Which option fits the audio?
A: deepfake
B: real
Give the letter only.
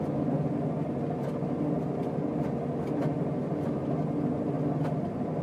B